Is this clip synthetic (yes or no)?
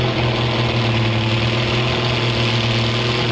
no